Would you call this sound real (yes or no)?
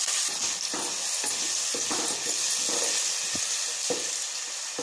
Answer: yes